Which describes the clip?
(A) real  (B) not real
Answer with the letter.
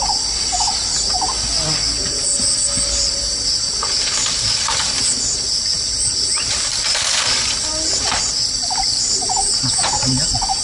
A